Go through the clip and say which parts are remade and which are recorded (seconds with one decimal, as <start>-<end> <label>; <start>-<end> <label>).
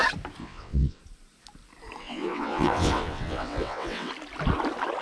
0.0-0.4 recorded; 0.4-1.0 remade; 1.0-2.0 recorded; 2.0-4.1 remade; 4.1-5.0 recorded